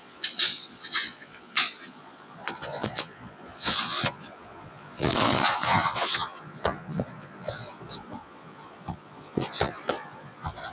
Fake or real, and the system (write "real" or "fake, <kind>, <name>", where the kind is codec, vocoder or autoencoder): fake, vocoder, Vocos